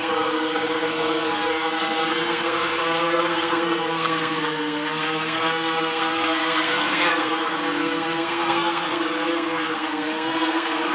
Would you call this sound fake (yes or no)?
yes